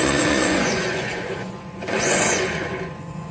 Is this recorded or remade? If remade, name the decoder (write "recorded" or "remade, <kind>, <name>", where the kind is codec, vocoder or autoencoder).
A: remade, vocoder, Vocos